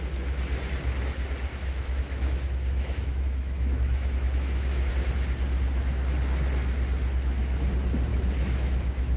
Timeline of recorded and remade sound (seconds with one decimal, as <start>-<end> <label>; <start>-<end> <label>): 0.0-1.5 recorded; 1.5-4.9 remade; 4.9-8.1 recorded; 8.1-9.2 remade